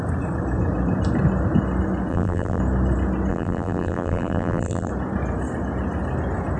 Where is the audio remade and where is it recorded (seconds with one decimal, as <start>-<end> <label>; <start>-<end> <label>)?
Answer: 0.0-2.1 recorded; 2.1-2.6 remade; 2.6-3.3 recorded; 3.3-4.9 remade; 4.9-6.6 recorded